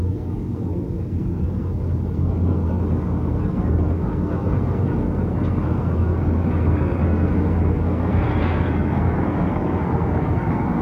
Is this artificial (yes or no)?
yes